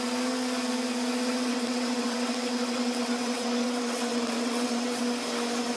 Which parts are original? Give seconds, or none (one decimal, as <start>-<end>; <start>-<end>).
0.0-1.5; 5.0-5.8